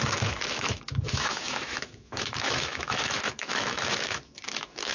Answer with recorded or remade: remade